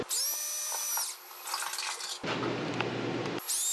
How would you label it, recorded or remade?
recorded